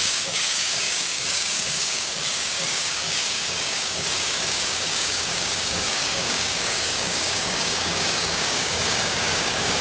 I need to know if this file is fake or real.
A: fake